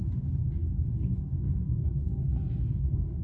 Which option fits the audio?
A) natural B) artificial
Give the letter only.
B